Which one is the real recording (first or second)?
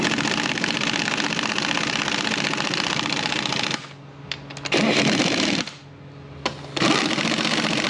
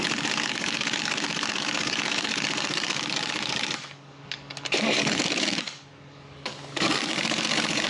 first